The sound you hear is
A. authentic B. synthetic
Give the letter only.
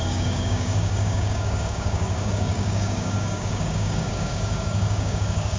B